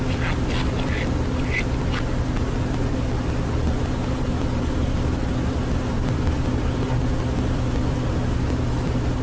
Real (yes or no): yes